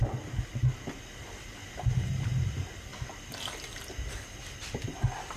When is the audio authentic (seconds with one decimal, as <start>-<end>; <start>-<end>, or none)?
0.0-5.4